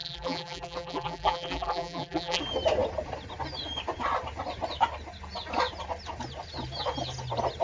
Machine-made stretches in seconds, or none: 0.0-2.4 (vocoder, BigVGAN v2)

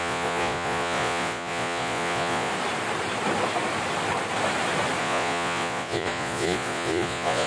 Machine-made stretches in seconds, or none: 0.0-2.5 (vocoder, Vocos); 5.0-7.5

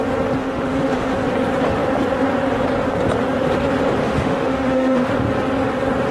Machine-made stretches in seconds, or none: 0.4-1.1 (autoencoder, DAC-VAE); 4.0-5.1

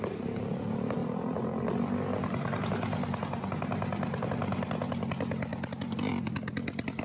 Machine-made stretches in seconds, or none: none

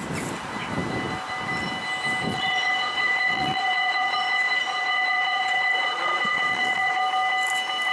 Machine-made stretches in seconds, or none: 2.3-7.0 (vocoder, Vocos)